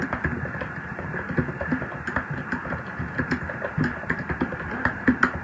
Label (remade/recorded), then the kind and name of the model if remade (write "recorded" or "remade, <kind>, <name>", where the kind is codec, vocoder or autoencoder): remade, vocoder, BigVGAN v2